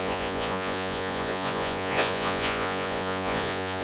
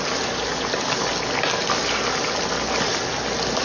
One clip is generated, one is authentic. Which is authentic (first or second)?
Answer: second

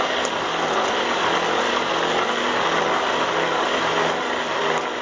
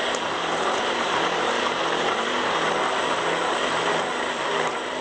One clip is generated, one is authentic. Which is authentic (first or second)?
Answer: first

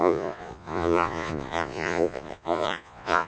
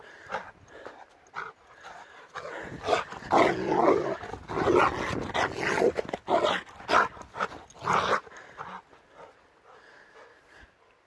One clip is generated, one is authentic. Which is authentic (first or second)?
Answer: second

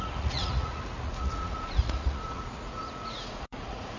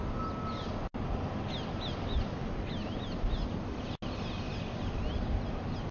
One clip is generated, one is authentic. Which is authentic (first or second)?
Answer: second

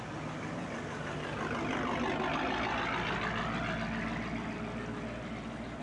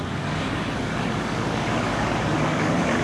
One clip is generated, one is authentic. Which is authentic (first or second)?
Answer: first